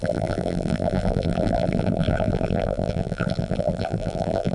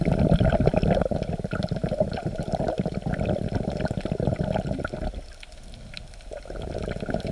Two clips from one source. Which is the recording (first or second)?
second